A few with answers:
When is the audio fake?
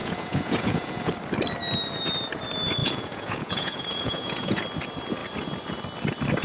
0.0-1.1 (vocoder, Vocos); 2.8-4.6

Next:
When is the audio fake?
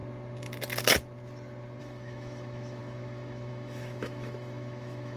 1.8-5.2 (autoencoder, DAC-VAE)